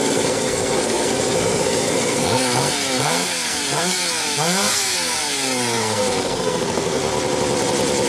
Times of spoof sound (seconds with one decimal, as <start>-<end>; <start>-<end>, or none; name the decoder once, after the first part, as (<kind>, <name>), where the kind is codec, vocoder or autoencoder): 0.0-7.0 (codec, SNAC)